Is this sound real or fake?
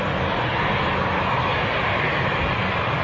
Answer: real